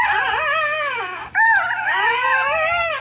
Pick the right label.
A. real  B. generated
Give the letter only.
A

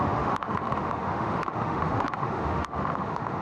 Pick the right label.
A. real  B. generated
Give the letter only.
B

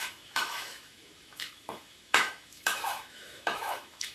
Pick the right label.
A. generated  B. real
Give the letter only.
A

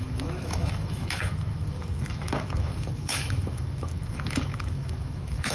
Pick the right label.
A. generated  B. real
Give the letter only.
A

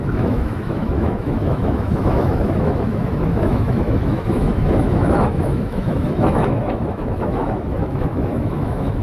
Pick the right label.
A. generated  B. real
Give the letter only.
A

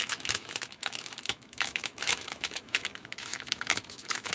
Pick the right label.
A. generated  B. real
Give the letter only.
A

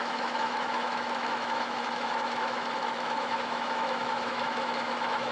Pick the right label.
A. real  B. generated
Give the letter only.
B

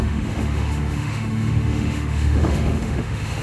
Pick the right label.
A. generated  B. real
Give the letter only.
A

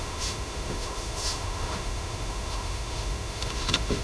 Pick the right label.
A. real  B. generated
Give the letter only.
B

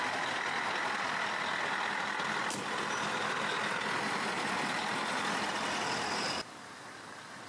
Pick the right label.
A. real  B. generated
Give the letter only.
A